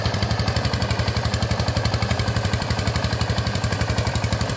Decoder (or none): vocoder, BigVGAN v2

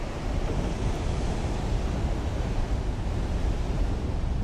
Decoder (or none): vocoder, BigVGAN v2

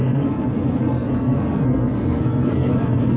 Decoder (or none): codec, SNAC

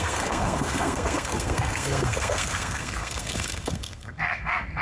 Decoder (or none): codec, SNAC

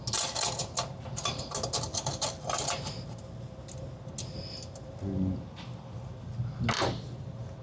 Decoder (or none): none